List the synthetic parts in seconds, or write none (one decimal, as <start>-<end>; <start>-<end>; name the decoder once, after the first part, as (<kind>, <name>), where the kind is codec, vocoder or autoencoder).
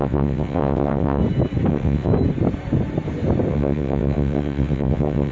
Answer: 0.0-1.2 (vocoder, WaveNeXt); 1.7-2.1; 3.5-5.3